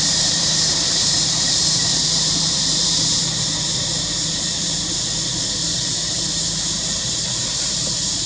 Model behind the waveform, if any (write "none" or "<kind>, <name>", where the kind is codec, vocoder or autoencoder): vocoder, BigVGAN v2